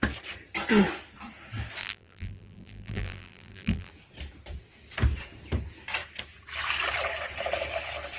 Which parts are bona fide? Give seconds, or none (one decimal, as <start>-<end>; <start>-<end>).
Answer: 0.0-1.8; 3.9-8.2